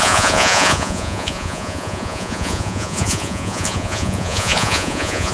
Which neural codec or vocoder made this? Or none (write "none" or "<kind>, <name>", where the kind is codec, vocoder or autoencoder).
vocoder, Vocos